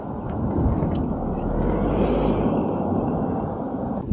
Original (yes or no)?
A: no